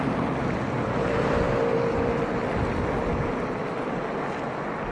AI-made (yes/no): no